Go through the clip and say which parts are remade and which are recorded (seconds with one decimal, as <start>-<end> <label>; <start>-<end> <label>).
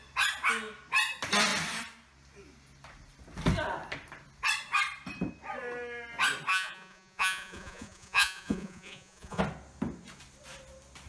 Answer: 0.0-6.5 recorded; 6.5-9.4 remade; 9.4-11.1 recorded